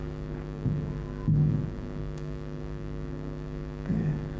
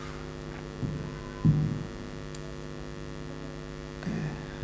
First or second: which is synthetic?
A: first